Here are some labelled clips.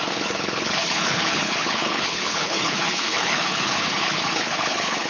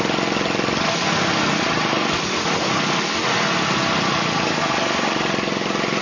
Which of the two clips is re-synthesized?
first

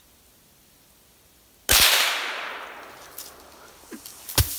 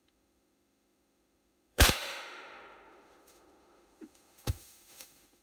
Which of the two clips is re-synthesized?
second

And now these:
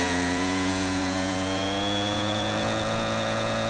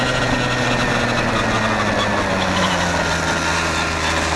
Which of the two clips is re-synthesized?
first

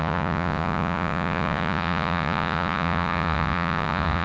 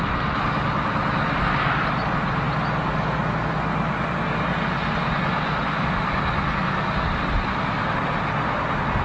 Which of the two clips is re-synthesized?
first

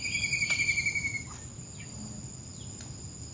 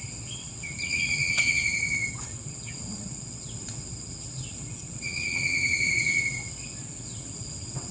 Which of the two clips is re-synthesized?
second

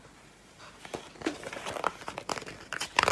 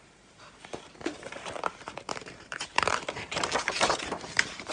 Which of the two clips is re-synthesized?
second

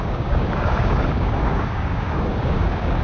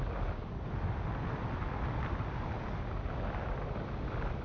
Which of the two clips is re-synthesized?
first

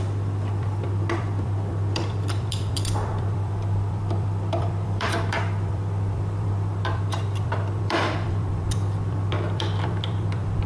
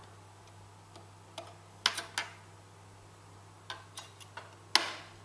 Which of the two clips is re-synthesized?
first